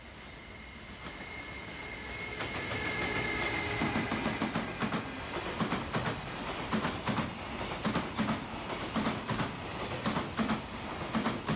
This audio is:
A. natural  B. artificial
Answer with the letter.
A